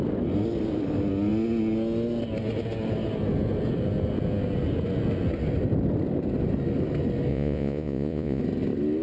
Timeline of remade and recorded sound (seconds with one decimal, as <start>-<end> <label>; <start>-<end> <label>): 0.0-7.3 recorded; 7.3-8.4 remade; 8.4-9.0 recorded